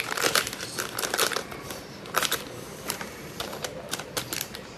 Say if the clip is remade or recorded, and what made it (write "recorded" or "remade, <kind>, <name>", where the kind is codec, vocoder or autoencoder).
remade, vocoder, BigVGAN v2